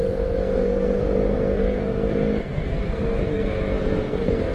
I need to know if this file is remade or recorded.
remade